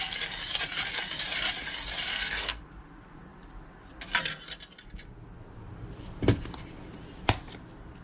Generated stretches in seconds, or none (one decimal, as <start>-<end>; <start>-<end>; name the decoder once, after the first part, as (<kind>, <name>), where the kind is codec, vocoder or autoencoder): 2.1-2.6 (codec, SNAC)